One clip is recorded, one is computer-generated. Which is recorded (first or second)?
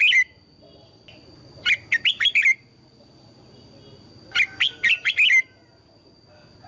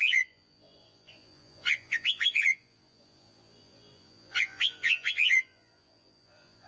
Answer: first